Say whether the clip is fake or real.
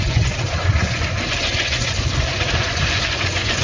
fake